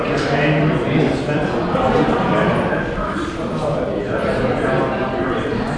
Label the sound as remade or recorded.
remade